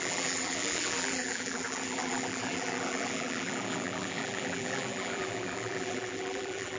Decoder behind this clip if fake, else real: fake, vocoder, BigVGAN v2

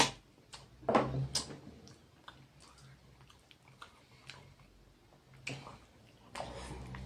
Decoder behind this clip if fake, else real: real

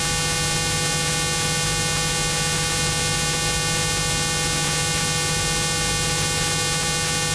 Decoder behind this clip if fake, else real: real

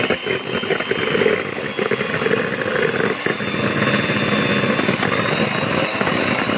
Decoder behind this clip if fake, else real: real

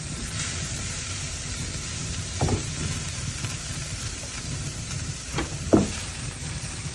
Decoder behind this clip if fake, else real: fake, vocoder, BigVGAN v2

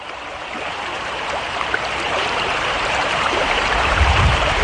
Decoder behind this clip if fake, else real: fake, vocoder, BigVGAN v2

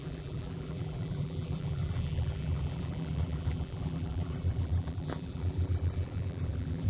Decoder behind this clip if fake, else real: fake, vocoder, BigVGAN v2